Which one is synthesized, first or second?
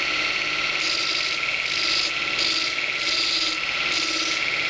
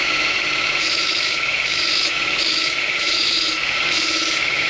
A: second